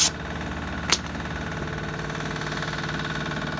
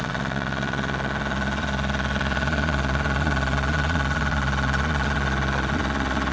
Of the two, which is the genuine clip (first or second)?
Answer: first